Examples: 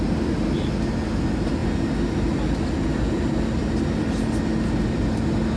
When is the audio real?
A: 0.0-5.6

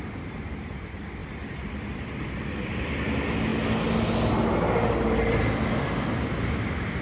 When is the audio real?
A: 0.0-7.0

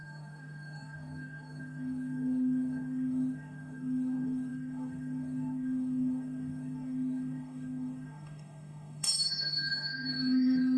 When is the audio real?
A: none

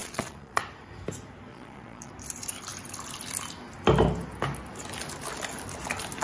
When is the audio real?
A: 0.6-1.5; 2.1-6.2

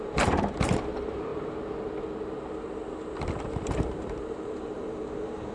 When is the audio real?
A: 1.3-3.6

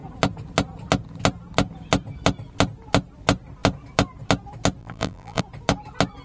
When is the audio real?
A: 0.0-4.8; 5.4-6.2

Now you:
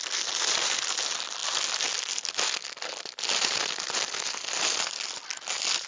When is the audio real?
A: 0.0-5.9

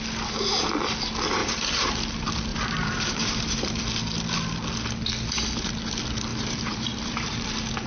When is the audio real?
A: 0.0-1.4; 1.9-2.5; 3.8-6.3; 7.5-7.9